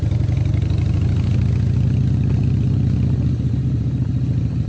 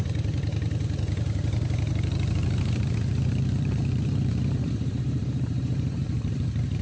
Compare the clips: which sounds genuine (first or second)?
first